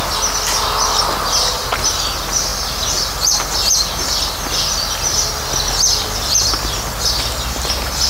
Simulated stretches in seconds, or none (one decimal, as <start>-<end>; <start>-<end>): none